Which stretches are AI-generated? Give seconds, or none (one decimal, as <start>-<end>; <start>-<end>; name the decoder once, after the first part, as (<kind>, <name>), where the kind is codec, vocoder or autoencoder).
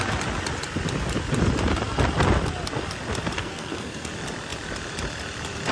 3.4-4.1 (codec, SNAC)